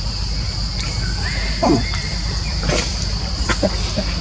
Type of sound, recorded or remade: recorded